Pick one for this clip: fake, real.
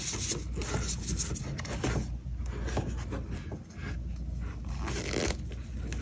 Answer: real